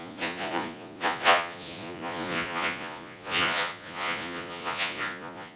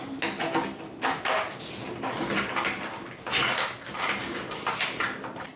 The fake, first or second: first